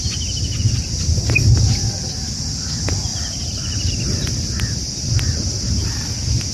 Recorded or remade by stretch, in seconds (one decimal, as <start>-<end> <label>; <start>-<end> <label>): 0.0-6.5 recorded